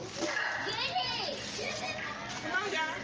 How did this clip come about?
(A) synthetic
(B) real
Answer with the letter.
B